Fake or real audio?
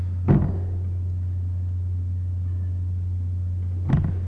real